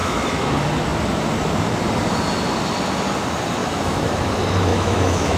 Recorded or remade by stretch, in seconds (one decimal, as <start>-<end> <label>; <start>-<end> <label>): 0.0-0.5 remade; 0.5-3.6 recorded; 3.6-4.3 remade; 4.3-4.7 recorded; 4.7-5.4 remade